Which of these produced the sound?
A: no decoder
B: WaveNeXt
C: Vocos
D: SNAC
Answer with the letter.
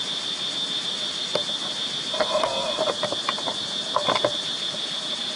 A